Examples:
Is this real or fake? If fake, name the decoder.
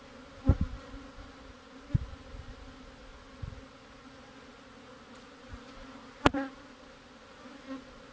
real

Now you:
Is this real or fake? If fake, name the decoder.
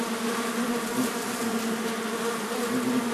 real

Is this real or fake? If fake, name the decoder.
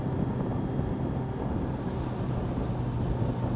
real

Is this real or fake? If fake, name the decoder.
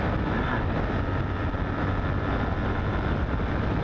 real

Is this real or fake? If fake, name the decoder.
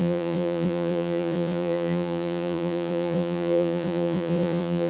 fake, vocoder, Vocos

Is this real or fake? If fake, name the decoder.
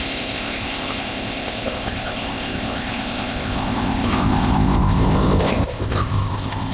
fake, codec, ZipCodec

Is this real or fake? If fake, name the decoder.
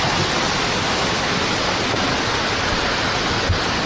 real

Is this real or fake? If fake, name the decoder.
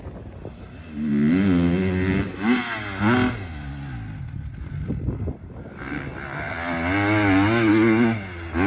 real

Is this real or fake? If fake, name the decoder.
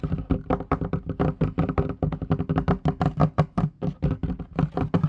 real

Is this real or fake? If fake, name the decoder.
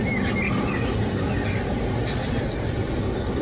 real